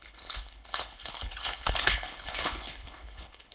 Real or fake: fake